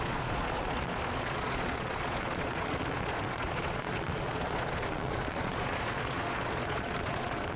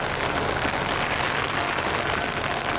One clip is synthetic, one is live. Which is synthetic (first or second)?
first